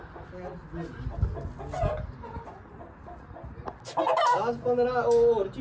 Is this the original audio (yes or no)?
yes